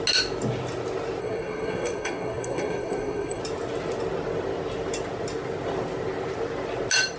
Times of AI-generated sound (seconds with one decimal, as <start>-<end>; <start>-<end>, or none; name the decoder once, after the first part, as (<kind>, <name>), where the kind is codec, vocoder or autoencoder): 1.2-3.4 (codec, SNAC)

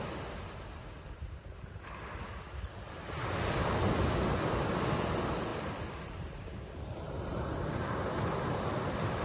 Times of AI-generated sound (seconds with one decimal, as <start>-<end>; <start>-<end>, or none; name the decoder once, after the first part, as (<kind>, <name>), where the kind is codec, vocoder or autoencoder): none

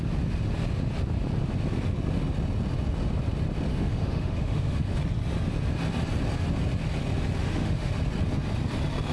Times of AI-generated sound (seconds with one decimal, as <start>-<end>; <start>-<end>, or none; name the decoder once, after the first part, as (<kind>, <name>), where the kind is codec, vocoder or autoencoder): 3.7-5.0 (autoencoder, DAC-VAE); 7.4-7.9

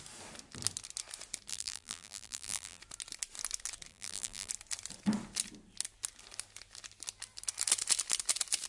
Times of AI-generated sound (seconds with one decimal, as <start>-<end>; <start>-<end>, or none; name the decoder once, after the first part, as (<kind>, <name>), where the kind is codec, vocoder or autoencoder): 1.5-2.8 (vocoder, BigVGAN v2); 3.9-4.5

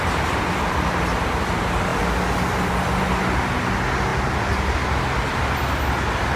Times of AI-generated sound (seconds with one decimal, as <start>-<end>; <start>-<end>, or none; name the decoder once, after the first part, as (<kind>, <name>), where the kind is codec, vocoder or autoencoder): none

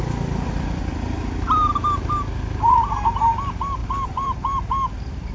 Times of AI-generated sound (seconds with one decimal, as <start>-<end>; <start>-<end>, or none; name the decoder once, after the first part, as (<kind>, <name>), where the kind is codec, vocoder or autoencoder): 3.8-5.3 (vocoder, BigVGAN v2)

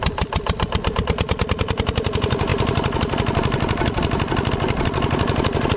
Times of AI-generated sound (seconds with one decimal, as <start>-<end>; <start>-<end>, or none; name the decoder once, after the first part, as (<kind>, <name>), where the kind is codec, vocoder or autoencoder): none

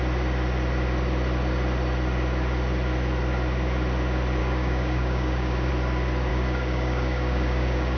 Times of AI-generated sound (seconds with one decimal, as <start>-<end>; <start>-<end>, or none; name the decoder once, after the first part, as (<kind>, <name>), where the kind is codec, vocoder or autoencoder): 4.4-5.7 (codec, DAC); 6.3-8.0